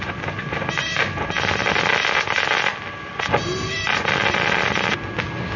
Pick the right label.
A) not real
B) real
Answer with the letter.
B